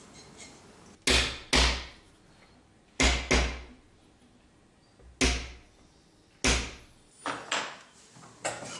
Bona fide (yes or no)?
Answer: yes